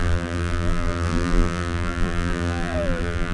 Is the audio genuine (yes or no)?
no